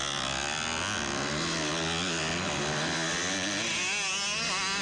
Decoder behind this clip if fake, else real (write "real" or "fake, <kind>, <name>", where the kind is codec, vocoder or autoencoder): real